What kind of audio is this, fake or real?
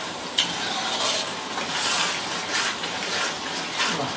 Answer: real